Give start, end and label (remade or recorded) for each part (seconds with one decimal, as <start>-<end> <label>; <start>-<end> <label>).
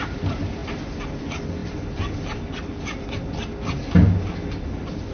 0.0-5.1 recorded